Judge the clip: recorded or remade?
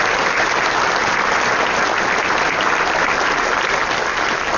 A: recorded